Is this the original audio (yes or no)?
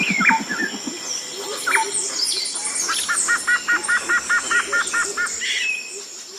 yes